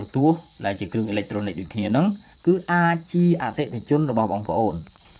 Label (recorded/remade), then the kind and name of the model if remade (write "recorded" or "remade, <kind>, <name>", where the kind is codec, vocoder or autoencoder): remade, vocoder, Vocos